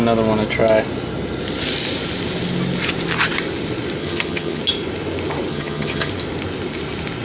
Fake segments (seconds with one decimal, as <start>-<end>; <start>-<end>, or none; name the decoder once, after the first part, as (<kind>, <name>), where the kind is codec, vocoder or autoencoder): 4.0-4.6 (vocoder, HiFi-GAN); 5.5-6.1